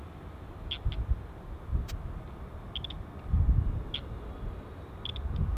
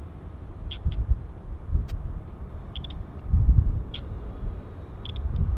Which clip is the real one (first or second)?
first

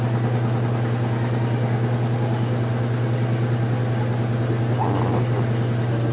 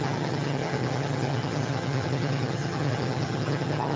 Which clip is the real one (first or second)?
first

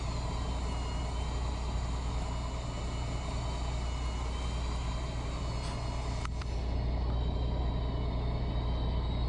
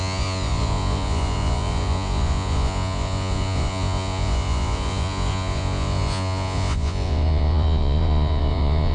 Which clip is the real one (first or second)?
first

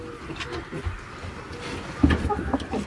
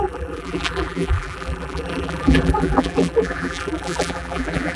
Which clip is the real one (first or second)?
first